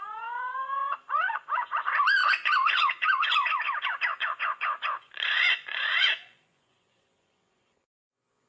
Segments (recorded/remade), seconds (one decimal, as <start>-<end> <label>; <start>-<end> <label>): 0.0-8.5 remade